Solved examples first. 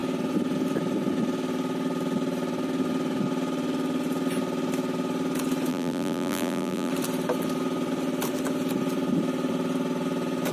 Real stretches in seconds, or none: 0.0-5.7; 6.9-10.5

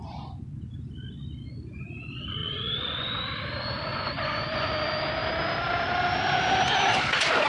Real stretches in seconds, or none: 0.0-2.4; 3.2-3.9; 4.7-7.5

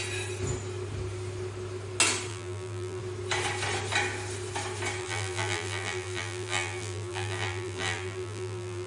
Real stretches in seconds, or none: 0.0-2.3; 3.0-5.0

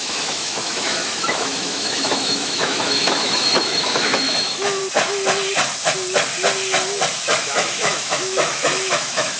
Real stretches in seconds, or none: 4.8-7.4

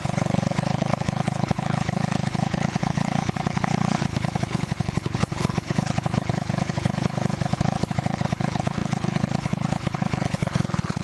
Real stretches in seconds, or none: none